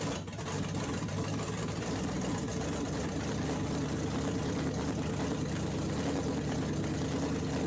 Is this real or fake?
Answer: real